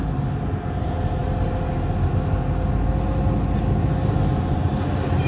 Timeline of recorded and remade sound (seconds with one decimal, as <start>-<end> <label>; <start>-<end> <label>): 0.0-5.3 recorded